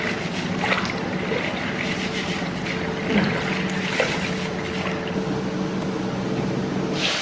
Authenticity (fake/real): real